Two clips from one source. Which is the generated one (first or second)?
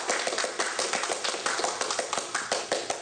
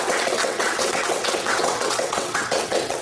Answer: second